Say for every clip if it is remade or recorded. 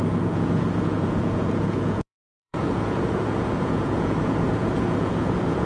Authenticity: remade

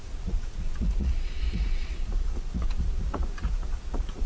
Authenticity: remade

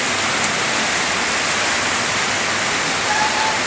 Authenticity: recorded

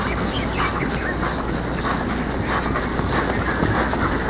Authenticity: recorded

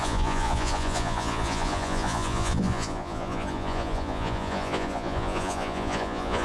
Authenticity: remade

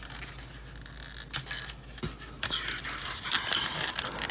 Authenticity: recorded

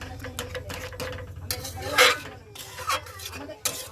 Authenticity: recorded